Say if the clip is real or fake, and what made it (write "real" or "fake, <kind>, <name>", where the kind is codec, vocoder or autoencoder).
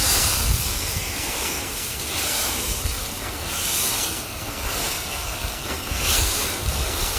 fake, codec, SNAC